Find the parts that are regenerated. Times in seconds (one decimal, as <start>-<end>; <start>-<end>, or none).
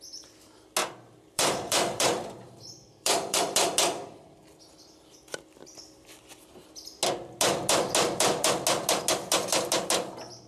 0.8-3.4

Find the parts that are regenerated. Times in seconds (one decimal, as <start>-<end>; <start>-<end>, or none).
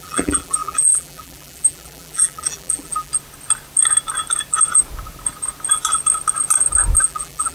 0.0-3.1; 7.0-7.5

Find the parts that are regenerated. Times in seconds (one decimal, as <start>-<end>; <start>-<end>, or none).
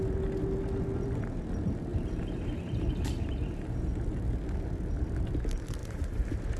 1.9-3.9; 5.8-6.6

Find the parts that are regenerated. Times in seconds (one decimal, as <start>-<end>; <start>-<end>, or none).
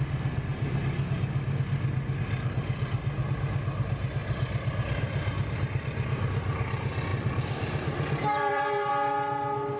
4.2-5.6; 7.1-8.9